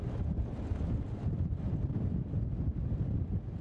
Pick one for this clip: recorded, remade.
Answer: recorded